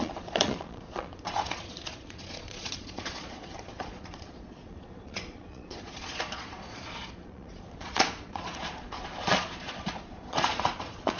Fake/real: fake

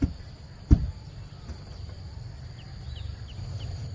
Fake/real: real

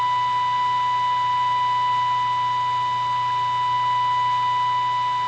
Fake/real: real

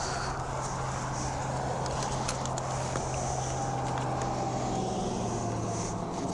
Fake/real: real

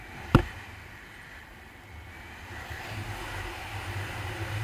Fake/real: real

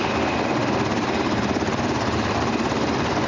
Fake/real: real